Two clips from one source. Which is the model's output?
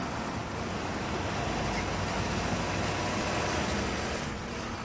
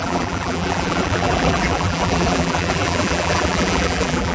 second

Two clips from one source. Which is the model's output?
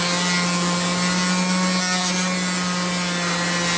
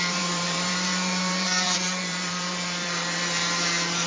second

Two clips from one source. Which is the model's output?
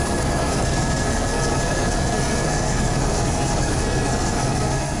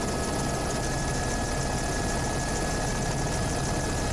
first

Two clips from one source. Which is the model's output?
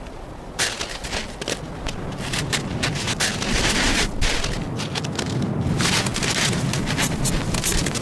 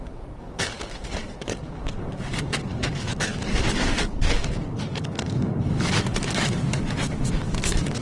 second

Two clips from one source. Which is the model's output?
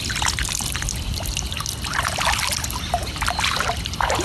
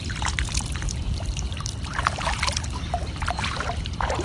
second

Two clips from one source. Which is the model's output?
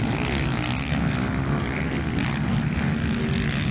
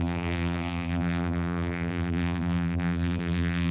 second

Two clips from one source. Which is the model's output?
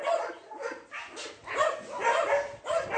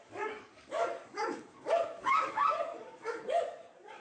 second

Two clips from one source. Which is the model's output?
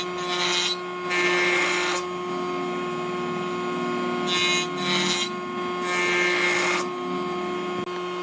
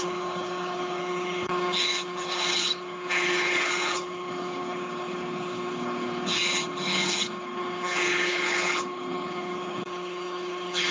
second